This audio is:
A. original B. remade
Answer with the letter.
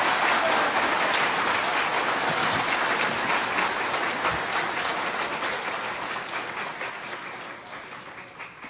A